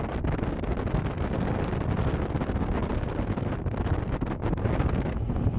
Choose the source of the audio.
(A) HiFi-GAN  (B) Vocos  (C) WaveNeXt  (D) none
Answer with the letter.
D